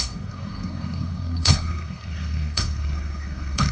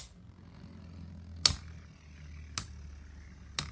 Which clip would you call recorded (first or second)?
second